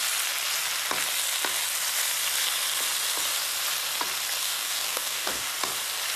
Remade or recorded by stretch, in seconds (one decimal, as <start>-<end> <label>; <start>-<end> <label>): 0.0-4.4 recorded; 4.4-5.5 remade; 5.5-6.2 recorded